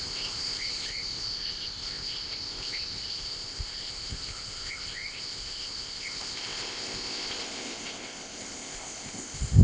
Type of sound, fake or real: fake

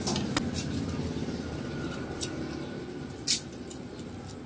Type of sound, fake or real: real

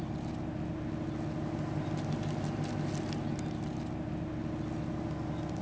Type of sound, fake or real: real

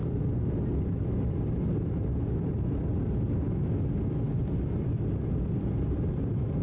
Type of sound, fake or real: real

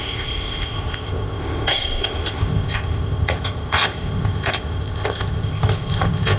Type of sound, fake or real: fake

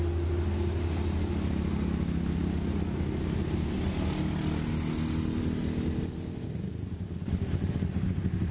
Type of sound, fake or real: real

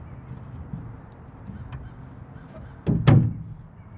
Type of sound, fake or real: real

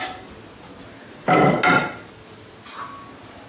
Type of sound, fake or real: real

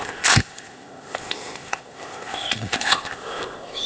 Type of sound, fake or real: fake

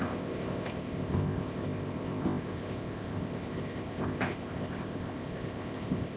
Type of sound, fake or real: fake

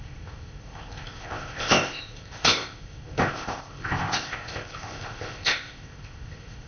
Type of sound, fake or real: fake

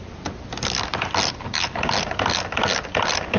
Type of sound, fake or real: real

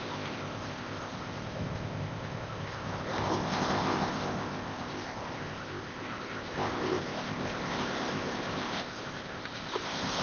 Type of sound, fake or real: fake